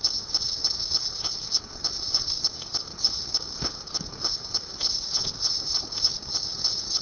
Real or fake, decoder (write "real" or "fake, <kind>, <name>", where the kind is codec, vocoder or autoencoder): real